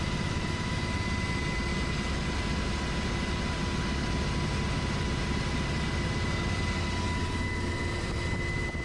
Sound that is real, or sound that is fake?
real